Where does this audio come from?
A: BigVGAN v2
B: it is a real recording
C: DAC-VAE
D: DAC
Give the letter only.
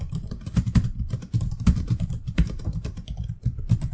A